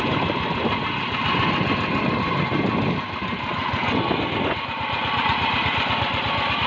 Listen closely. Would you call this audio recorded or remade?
recorded